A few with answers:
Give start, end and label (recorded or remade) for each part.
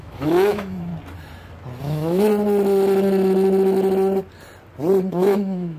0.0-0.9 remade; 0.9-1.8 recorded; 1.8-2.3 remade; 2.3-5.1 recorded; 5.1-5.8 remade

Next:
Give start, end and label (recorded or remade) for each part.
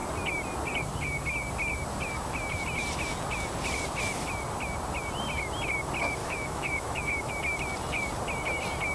0.0-6.2 recorded; 6.2-7.3 remade; 7.3-8.9 recorded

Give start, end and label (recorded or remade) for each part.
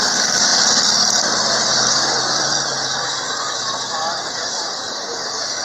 0.0-5.6 remade